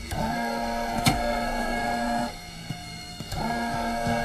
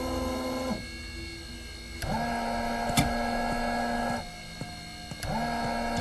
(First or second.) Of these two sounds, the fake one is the first